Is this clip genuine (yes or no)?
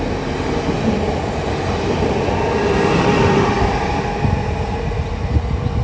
yes